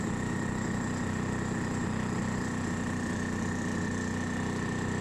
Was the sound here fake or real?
real